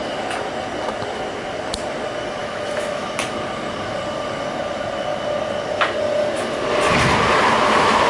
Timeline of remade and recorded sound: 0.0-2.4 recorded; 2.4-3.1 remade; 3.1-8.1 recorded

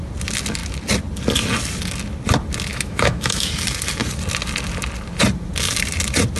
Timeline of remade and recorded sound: 0.0-2.7 recorded; 2.7-3.5 remade; 3.5-6.4 recorded

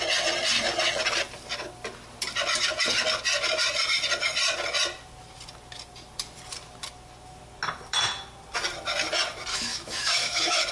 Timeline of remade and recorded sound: 0.0-9.5 recorded; 9.5-10.7 remade

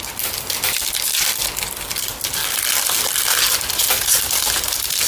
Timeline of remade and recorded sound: 0.0-5.1 recorded

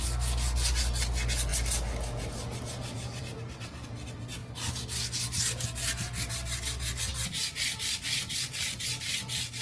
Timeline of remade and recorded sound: 0.0-9.6 recorded

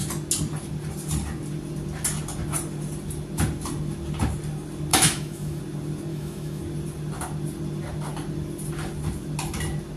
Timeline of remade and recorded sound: 0.0-4.9 recorded; 4.9-5.6 remade; 5.6-6.1 recorded; 6.1-6.6 remade; 6.6-10.0 recorded

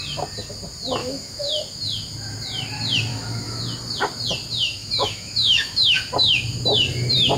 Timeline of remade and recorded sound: 0.0-1.0 recorded; 1.0-1.5 remade; 1.5-3.1 recorded; 3.1-3.6 remade; 3.6-4.8 recorded; 4.8-6.1 remade; 6.1-7.4 recorded